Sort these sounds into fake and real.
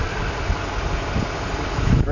real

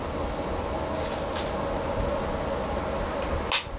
real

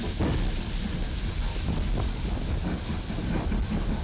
real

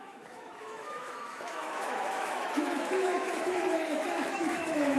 fake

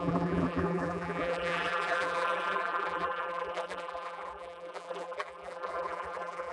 fake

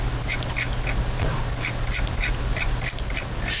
real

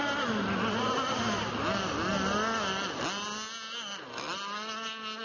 real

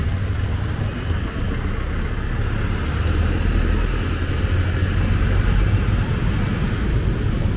real